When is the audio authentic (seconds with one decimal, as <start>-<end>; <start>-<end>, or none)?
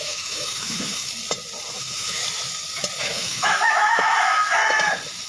1.1-1.7; 2.2-3.0; 4.6-5.3